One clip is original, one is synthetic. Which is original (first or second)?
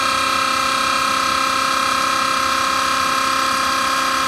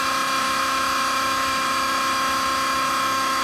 first